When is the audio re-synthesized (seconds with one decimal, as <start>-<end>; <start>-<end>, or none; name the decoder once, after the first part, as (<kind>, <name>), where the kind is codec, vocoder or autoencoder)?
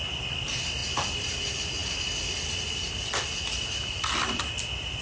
none